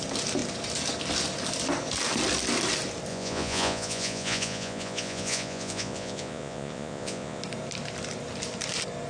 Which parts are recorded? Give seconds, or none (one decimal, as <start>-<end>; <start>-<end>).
0.0-3.1; 7.4-9.1